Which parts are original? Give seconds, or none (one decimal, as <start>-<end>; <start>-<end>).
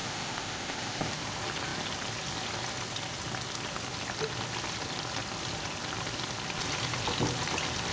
1.1-7.9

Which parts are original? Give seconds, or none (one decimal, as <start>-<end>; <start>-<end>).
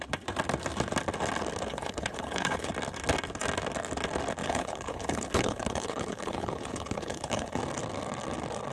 0.0-1.7; 2.7-4.4; 7.6-8.7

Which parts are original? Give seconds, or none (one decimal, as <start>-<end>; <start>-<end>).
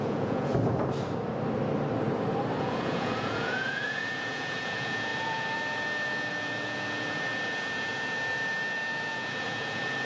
0.5-2.6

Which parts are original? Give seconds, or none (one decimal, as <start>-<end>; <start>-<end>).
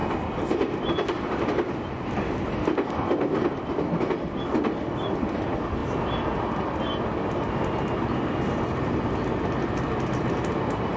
0.0-11.0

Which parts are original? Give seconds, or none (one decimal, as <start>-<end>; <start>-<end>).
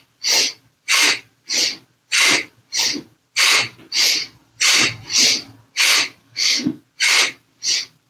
0.0-6.2; 6.8-8.1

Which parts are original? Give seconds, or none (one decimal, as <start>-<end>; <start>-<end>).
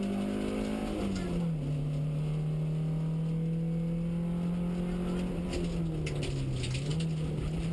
0.0-7.7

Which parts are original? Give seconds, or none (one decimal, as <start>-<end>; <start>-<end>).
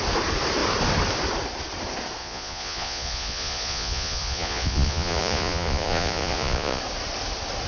0.0-2.2; 6.8-7.7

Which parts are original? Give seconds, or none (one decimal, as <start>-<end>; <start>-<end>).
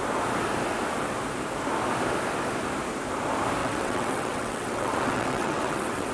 0.0-3.6